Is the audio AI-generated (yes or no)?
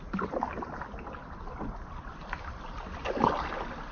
no